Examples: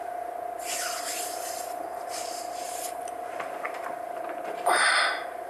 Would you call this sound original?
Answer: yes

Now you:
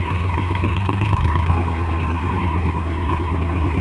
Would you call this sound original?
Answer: no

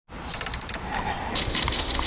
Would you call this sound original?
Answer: yes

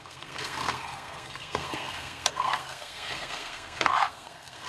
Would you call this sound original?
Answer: no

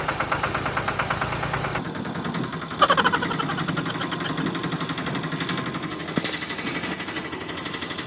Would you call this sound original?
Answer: yes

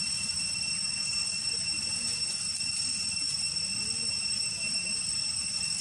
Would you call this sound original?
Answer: yes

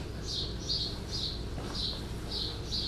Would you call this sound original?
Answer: yes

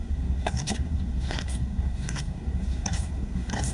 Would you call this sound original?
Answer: no